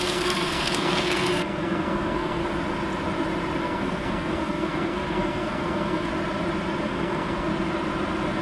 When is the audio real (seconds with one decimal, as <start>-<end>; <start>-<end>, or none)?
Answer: 2.4-3.6; 6.1-6.8; 7.5-8.4